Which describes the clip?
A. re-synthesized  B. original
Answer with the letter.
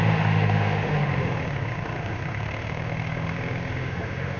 A